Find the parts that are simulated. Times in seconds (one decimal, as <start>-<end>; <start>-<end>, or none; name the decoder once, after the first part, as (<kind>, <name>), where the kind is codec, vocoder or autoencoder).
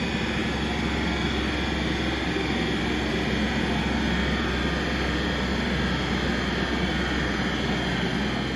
none